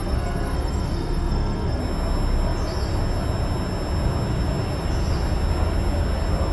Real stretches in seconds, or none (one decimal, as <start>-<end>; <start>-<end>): 1.8-6.5